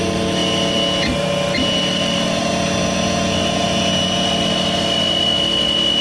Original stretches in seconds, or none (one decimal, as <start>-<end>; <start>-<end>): 0.0-6.0